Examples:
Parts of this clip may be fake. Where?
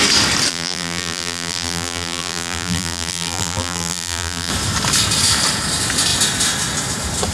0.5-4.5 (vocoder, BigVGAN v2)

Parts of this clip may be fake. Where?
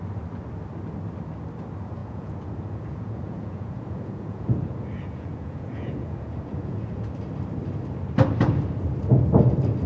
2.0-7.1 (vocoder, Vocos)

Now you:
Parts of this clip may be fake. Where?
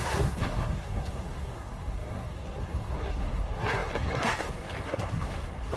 0.0-5.8 (codec, SNAC)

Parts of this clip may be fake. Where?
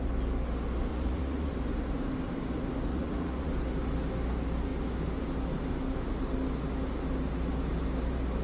0.9-1.5 (vocoder, Vocos); 2.9-3.5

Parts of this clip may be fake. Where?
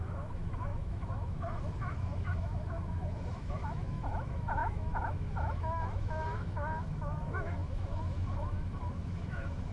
0.0-9.7 (autoencoder, DAC-VAE)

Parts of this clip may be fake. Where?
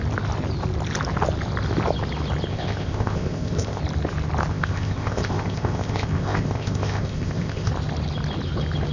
2.5-3.8 (codec, ZipCodec); 4.5-7.7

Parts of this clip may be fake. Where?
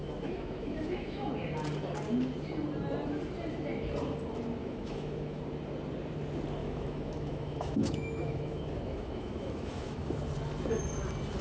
0.0-1.3 (autoencoder, DAC-VAE); 4.6-5.4; 6.6-10.2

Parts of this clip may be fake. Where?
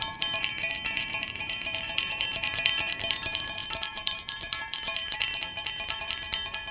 0.0-6.7 (vocoder, BigVGAN v2)